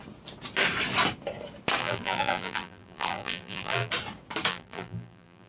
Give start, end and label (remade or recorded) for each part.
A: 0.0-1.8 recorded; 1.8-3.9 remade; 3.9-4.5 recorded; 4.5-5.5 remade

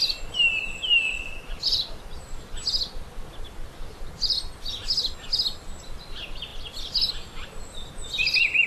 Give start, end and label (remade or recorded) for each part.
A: 0.0-0.9 recorded; 0.9-2.2 remade; 2.2-8.7 recorded

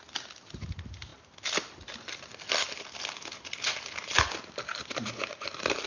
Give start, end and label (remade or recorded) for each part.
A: 0.0-4.7 recorded; 4.7-5.9 remade

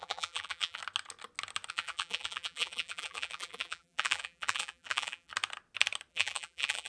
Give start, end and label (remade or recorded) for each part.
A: 0.0-0.8 remade; 0.8-1.7 recorded; 1.7-5.3 remade; 5.3-6.1 recorded; 6.1-6.9 remade

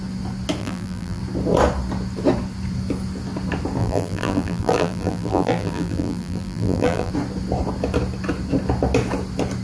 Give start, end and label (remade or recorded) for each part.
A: 0.0-0.6 recorded; 0.6-1.2 remade; 1.2-3.8 recorded; 3.8-7.1 remade; 7.1-9.6 recorded

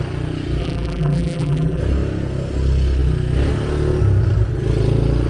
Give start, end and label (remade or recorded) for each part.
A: 0.0-0.6 recorded; 0.6-1.8 remade; 1.8-5.3 recorded